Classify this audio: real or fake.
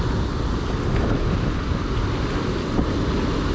real